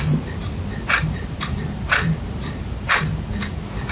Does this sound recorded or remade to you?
remade